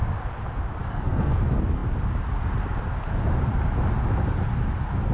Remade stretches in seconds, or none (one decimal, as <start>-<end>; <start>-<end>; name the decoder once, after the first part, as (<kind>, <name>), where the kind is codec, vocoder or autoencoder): 0.8-1.4 (codec, SNAC)